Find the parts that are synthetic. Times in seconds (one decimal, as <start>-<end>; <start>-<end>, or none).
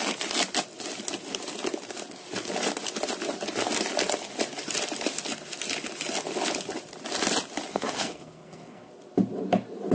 7.7-8.9